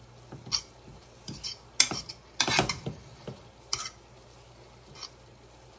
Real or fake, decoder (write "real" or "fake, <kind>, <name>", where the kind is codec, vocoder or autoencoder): real